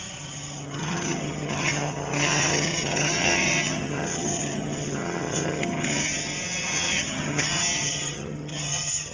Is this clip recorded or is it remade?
remade